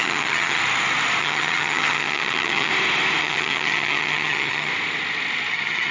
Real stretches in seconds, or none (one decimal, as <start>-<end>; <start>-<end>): 0.6-1.2; 2.7-3.2; 4.7-5.5